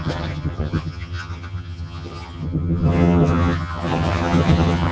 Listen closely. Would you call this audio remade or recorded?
remade